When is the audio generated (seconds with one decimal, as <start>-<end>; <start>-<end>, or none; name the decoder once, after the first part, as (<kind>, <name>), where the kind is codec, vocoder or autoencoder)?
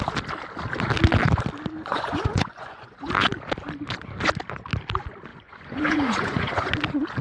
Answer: 1.8-3.1 (vocoder, Vocos); 5.3-6.7